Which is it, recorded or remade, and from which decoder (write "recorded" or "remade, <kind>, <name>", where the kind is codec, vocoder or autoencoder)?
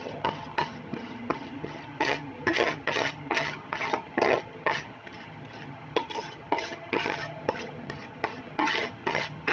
remade, vocoder, HiFi-GAN